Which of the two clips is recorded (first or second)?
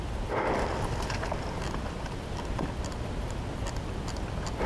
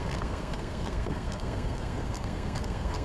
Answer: first